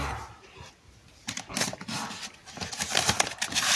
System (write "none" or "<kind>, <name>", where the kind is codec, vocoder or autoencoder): vocoder, BigVGAN v2